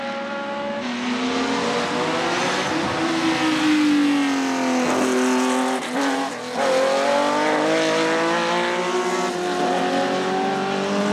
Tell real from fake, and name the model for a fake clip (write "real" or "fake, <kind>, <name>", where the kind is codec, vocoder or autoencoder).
real